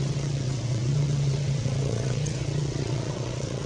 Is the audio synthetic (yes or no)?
yes